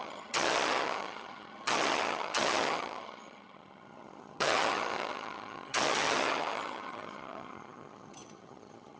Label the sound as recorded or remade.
remade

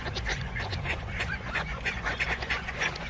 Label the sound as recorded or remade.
remade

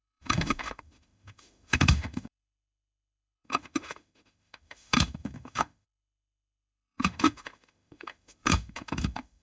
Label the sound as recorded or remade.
remade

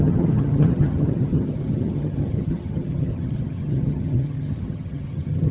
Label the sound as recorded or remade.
remade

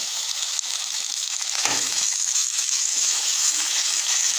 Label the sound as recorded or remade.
remade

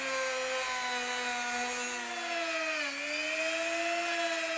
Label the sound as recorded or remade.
recorded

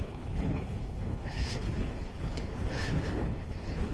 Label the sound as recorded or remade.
remade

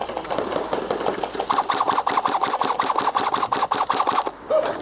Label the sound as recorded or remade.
remade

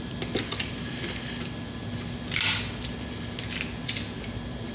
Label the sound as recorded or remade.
recorded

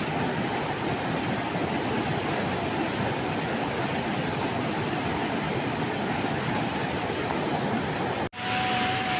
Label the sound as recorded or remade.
recorded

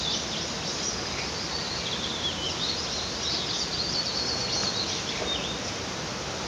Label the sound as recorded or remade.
recorded